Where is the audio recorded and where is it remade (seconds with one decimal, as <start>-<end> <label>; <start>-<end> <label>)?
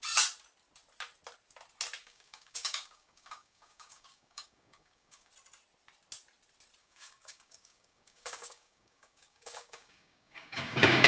0.0-2.0 recorded; 2.0-5.3 remade; 5.3-6.8 recorded; 6.8-11.1 remade